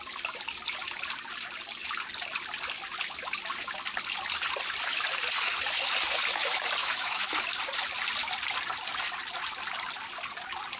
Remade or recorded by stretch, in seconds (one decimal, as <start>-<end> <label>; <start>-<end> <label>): 0.0-6.8 recorded; 6.8-7.3 remade; 7.3-10.8 recorded